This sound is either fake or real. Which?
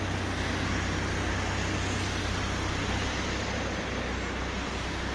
real